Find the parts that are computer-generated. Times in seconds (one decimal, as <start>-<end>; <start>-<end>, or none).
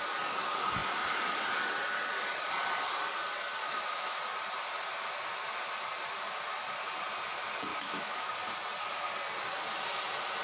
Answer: 3.6-4.2; 7.7-8.3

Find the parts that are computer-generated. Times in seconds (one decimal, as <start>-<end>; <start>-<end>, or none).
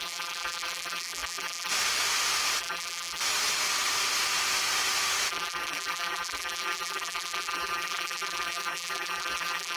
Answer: 0.0-1.7; 2.6-3.2; 5.3-9.8